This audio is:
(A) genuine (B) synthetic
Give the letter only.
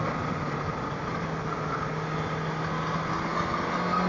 A